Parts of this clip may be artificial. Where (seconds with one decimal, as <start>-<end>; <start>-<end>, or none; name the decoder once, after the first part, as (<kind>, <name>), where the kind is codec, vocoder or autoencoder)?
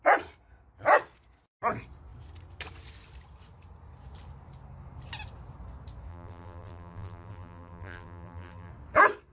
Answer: 6.1-8.7 (vocoder, BigVGAN v2)